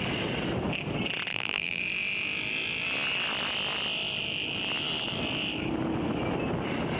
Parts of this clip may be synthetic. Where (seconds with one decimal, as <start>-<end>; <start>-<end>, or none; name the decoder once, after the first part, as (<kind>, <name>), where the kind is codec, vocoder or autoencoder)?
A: 1.3-1.8 (vocoder, BigVGAN v2)